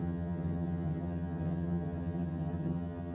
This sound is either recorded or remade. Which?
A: remade